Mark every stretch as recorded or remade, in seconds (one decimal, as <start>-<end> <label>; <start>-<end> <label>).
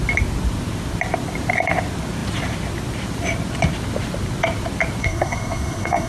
0.0-5.0 recorded; 5.0-6.1 remade